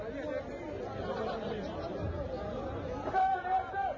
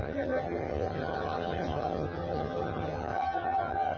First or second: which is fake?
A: second